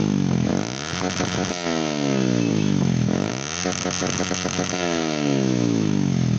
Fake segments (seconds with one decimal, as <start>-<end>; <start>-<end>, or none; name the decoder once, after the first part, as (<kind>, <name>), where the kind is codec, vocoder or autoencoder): 0.0-0.5 (autoencoder, DAC-VAE); 2.5-3.3; 4.0-6.4